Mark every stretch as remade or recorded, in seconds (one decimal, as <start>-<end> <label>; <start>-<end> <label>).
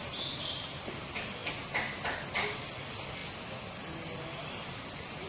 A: 0.0-5.3 recorded